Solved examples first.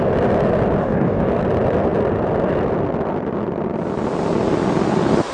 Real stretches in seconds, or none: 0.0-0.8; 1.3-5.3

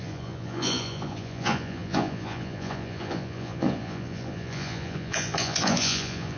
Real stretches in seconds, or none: none

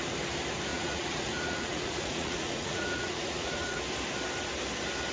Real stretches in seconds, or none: 0.0-0.7; 3.8-5.1

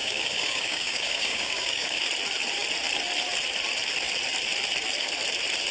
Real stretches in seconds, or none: 2.0-5.7

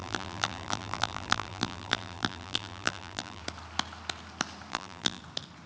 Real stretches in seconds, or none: 3.4-4.7; 5.2-5.7

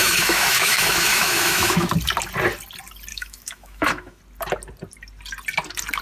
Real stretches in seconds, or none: 1.9-3.1; 4.2-6.0

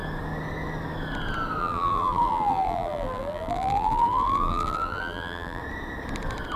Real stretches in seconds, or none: 0.0-1.6; 5.6-6.6

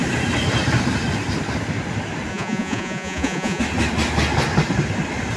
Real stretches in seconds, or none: 0.0-2.3; 3.6-5.4